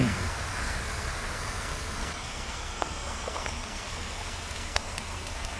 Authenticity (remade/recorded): remade